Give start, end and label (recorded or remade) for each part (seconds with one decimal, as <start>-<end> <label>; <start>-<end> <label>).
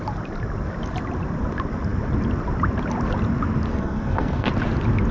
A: 0.0-3.7 recorded; 3.7-4.5 remade; 4.5-5.1 recorded